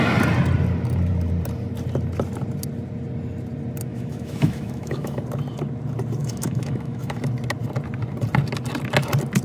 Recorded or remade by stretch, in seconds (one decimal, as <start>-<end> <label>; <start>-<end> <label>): 0.0-3.9 recorded; 3.9-5.2 remade; 5.2-6.2 recorded; 6.2-7.2 remade; 7.2-9.4 recorded